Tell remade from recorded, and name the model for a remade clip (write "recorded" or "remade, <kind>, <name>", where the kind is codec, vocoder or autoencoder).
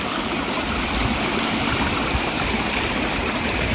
recorded